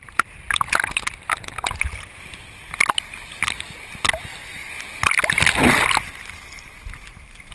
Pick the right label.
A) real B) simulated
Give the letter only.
A